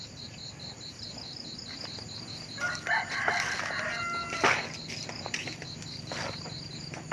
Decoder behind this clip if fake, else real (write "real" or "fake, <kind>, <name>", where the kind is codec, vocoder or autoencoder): real